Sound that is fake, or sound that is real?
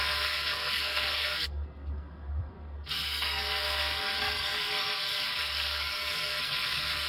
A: fake